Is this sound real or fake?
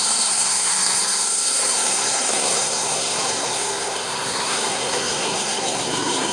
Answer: fake